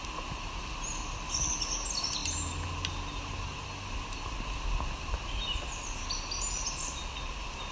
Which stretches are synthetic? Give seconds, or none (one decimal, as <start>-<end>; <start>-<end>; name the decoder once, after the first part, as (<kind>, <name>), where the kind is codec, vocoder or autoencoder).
none